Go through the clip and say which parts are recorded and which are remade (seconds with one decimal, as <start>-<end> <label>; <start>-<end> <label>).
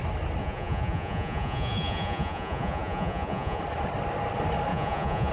0.0-0.4 recorded; 0.4-3.6 remade; 3.6-4.7 recorded; 4.7-5.3 remade